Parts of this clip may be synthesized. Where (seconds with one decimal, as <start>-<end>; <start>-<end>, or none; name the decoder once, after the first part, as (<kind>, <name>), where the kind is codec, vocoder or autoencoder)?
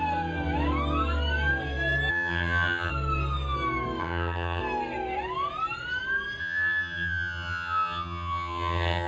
2.1-2.9 (vocoder, HiFi-GAN); 4.0-4.6; 6.4-9.1